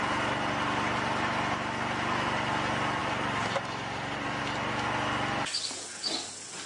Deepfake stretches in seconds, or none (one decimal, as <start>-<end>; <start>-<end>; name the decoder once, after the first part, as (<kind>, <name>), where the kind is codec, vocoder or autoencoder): 3.0-4.4 (vocoder, BigVGAN v2)